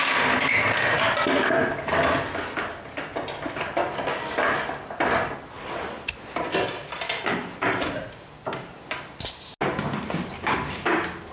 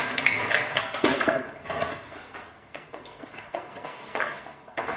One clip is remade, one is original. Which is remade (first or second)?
second